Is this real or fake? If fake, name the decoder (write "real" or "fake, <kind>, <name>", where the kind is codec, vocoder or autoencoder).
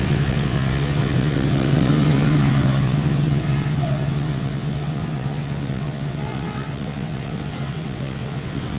fake, vocoder, WaveNeXt